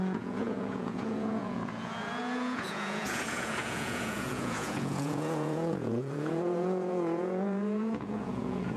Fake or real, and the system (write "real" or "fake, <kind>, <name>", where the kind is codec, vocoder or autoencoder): fake, vocoder, Vocos